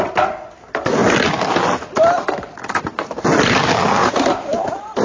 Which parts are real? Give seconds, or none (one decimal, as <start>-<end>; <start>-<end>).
0.0-4.0